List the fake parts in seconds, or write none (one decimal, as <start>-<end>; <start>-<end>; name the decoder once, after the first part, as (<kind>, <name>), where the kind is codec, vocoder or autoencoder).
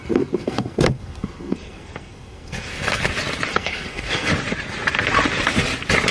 0.0-3.0 (codec, SNAC); 3.5-4.3